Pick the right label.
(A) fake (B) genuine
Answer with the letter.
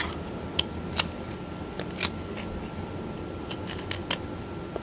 B